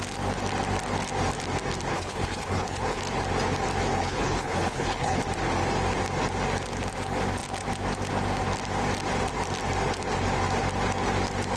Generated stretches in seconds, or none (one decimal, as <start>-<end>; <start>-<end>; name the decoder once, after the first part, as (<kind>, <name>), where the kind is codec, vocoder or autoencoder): 1.9-3.0 (codec, HILCodec); 4.0-5.2